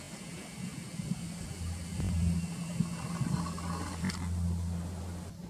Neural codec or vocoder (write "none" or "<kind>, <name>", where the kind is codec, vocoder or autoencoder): none